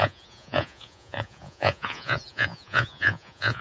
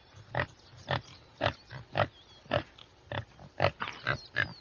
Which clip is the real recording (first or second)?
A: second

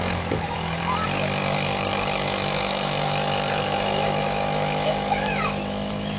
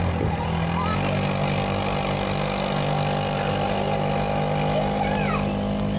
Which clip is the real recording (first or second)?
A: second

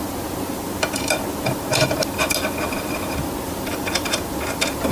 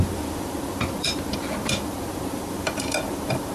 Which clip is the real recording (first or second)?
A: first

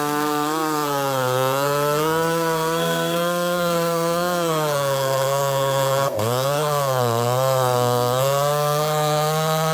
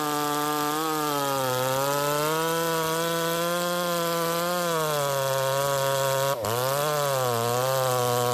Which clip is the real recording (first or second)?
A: second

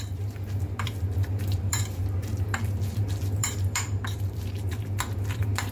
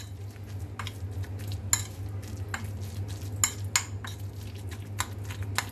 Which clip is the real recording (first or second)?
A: second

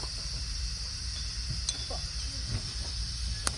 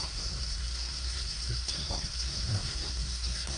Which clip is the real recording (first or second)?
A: first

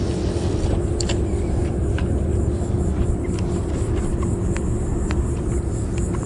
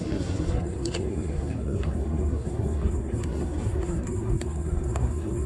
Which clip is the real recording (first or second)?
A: first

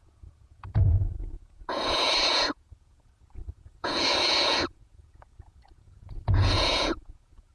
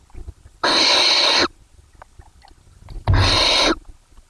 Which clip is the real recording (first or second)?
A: second